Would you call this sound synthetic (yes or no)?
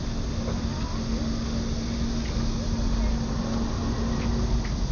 no